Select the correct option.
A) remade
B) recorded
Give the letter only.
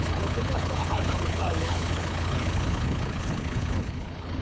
A